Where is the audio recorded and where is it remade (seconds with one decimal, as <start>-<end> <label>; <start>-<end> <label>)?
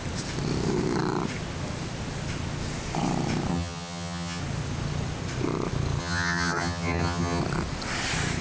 0.0-3.5 recorded; 3.5-4.4 remade; 4.4-6.0 recorded; 6.0-7.4 remade; 7.4-8.4 recorded